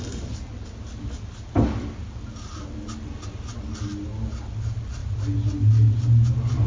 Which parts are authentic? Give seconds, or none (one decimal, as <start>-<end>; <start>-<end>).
0.0-6.7